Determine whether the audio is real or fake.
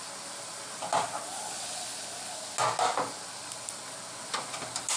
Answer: real